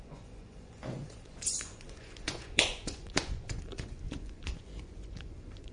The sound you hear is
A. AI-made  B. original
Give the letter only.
A